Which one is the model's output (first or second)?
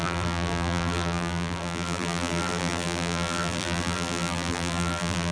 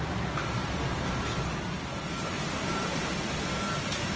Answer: first